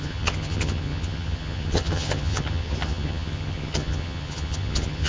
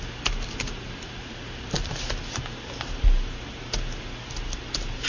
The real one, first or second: second